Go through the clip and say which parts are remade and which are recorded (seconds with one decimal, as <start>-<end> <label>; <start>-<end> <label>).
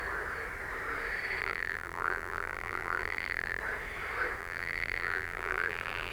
0.0-1.4 recorded; 1.4-3.6 remade; 3.6-4.4 recorded; 4.4-6.1 remade